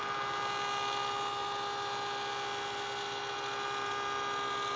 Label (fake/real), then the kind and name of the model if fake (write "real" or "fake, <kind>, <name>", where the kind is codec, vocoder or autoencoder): real